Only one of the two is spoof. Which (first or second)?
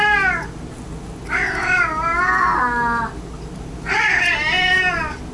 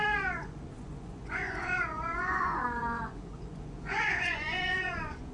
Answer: second